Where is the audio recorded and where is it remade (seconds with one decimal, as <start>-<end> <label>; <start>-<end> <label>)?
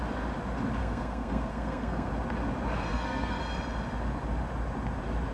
0.0-0.8 recorded; 0.8-2.1 remade; 2.1-2.9 recorded; 2.9-3.4 remade; 3.4-5.3 recorded